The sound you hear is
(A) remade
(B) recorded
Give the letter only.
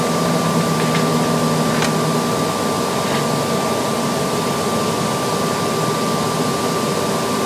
B